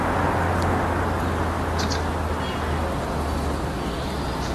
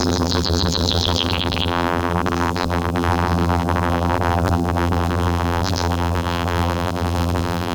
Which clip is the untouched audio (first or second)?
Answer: first